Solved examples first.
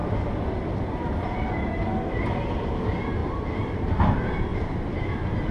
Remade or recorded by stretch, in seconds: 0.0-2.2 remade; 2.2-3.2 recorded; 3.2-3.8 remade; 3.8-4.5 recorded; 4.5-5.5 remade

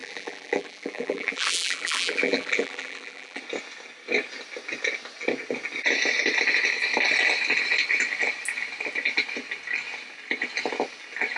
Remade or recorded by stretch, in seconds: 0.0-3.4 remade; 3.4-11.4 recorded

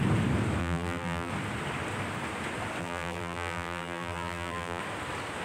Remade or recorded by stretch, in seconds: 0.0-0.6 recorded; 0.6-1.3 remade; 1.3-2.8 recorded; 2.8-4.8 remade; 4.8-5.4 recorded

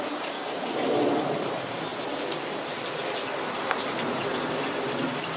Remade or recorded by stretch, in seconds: 0.0-1.9 remade; 1.9-5.4 recorded